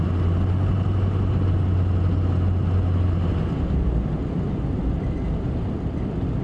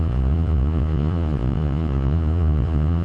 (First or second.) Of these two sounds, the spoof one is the second